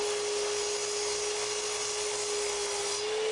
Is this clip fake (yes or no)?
no